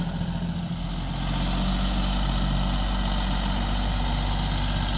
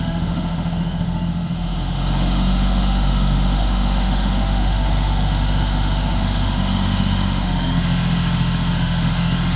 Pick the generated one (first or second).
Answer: second